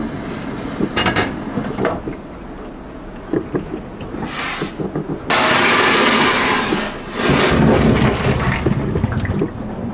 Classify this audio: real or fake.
real